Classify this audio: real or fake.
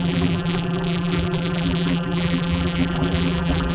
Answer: fake